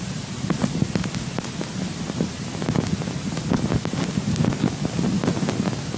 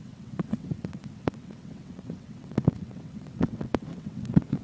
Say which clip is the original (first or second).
first